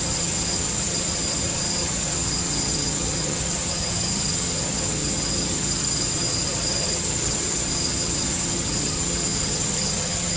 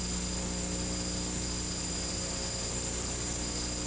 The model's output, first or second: first